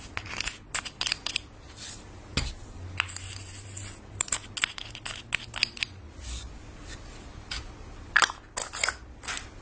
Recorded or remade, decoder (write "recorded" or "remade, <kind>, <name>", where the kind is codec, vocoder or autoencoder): recorded